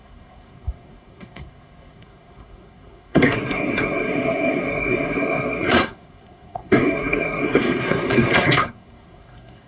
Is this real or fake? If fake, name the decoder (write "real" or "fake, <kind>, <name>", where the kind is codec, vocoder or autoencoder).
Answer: fake, codec, SNAC